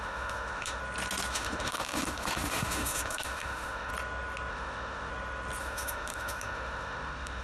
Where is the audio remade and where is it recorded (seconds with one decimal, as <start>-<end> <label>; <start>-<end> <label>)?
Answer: 0.0-0.8 remade; 0.8-1.3 recorded; 1.3-3.9 remade; 3.9-4.5 recorded; 4.5-5.1 remade; 5.1-5.6 recorded; 5.6-7.4 remade